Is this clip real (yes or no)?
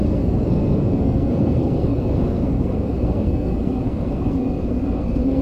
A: no